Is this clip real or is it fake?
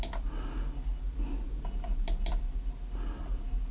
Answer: real